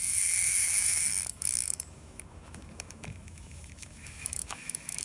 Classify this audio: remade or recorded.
remade